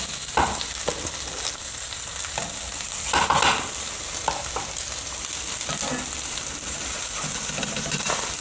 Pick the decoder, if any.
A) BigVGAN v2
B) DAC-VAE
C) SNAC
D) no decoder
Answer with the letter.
D